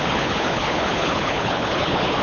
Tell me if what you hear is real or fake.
fake